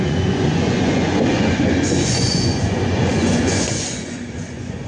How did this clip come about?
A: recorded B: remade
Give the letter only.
B